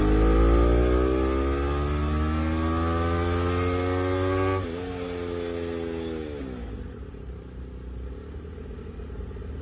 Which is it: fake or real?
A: real